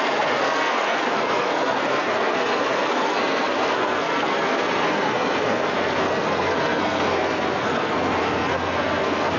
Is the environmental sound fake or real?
fake